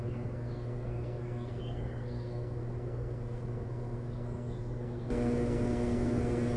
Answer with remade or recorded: remade